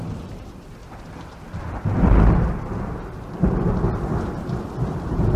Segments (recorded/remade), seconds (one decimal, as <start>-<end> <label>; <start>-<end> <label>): 0.0-0.8 remade; 0.8-4.0 recorded; 4.0-5.4 remade